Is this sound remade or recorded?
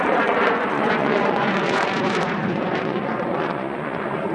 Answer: remade